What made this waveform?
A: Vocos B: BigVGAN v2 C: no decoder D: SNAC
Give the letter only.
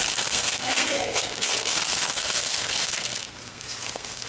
D